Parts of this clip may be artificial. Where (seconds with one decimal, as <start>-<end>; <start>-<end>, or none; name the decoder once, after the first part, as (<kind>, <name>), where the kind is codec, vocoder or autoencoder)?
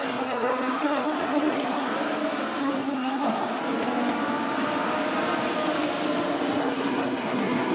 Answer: 0.0-1.9 (codec, SNAC); 2.6-3.6; 6.6-7.7